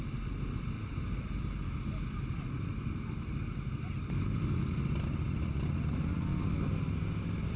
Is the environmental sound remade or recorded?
recorded